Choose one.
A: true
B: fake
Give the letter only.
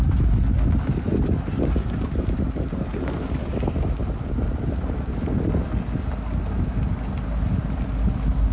A